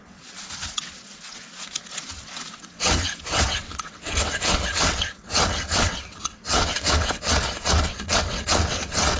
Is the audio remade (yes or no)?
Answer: yes